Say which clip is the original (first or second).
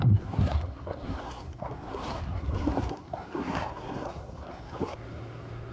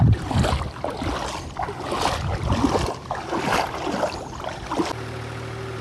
second